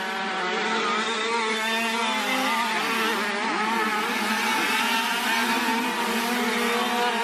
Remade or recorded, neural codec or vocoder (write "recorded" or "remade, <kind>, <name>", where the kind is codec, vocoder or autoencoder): recorded